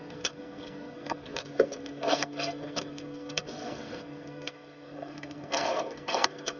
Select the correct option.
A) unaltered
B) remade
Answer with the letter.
B